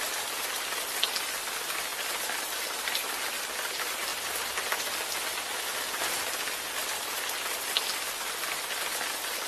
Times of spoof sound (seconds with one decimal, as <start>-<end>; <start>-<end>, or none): none